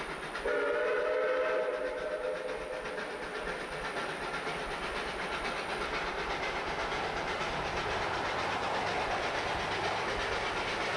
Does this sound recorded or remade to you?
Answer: recorded